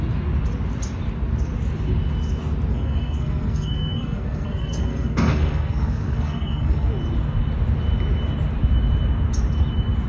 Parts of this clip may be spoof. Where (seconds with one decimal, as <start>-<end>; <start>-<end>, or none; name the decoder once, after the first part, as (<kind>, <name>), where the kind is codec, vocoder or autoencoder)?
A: 2.7-6.9 (codec, SNAC)